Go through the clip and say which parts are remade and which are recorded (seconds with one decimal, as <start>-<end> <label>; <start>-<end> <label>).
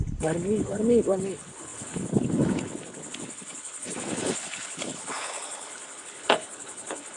0.0-7.2 remade